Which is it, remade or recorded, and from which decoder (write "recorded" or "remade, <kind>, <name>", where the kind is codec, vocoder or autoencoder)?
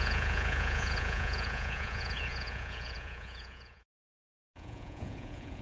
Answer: remade, vocoder, Vocos